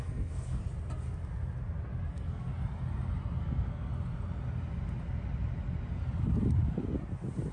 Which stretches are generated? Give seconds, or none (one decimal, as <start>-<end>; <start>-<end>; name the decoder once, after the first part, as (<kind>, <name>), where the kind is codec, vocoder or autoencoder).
0.0-0.6 (codec, SNAC); 2.1-2.5; 3.4-3.9